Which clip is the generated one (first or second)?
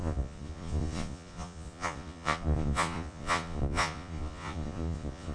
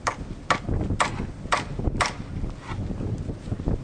first